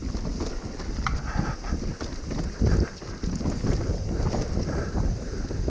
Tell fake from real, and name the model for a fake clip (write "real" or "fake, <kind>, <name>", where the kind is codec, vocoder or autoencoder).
real